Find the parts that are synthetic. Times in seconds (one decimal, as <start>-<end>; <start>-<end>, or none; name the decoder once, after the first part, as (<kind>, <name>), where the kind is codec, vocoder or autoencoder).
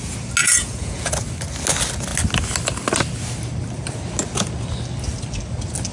0.4-1.1 (vocoder, Vocos)